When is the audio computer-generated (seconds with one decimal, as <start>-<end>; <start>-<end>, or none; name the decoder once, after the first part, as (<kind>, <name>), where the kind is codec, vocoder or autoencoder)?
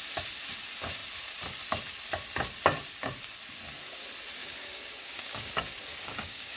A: 4.4-5.5 (codec, DAC); 5.9-6.6